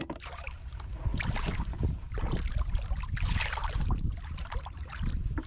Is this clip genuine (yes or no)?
no